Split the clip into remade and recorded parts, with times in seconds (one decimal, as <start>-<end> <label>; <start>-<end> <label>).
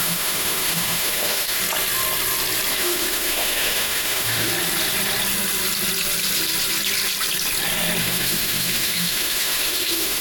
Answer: 0.0-1.6 remade; 1.6-2.7 recorded; 2.7-4.5 remade; 4.5-8.0 recorded; 8.0-10.2 remade